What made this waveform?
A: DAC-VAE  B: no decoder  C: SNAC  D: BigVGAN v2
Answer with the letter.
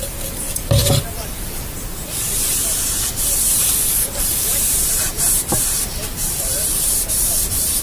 D